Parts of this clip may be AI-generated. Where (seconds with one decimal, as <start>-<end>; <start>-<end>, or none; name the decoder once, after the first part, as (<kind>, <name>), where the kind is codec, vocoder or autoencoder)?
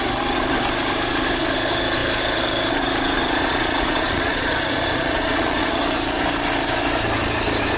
3.2-5.8 (vocoder, Vocos)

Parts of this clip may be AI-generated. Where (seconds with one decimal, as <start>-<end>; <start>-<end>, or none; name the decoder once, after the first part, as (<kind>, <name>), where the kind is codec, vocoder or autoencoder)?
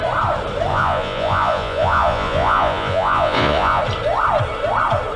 0.7-3.8 (vocoder, Vocos)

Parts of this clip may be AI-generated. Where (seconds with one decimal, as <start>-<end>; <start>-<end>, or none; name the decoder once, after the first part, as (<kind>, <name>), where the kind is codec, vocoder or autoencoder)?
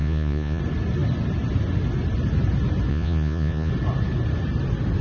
0.0-0.6 (vocoder, Vocos); 2.9-3.7